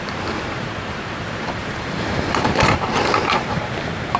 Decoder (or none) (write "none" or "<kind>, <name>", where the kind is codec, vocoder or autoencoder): vocoder, BigVGAN v2